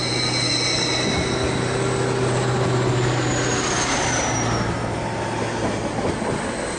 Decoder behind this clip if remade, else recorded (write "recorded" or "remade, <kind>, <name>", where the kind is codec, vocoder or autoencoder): recorded